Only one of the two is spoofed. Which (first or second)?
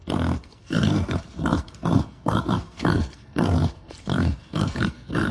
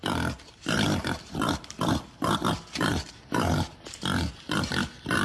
first